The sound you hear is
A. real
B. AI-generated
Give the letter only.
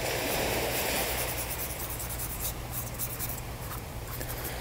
B